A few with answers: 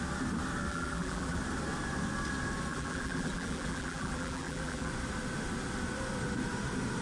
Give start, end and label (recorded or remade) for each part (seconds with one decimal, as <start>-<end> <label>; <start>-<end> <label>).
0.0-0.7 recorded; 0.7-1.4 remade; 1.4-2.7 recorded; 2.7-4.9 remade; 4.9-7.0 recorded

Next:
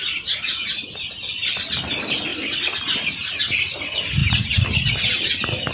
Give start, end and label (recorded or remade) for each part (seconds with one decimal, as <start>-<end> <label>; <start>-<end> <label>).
0.0-5.7 recorded

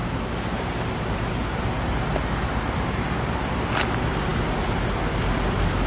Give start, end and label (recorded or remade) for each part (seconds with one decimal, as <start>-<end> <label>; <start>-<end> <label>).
0.0-3.5 remade; 3.5-5.9 recorded